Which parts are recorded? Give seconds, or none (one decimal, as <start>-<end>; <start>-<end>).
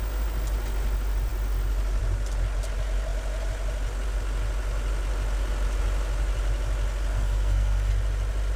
0.0-7.1; 7.9-8.6